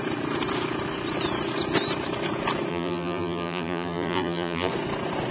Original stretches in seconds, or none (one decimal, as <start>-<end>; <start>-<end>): 0.0-2.7; 4.7-5.3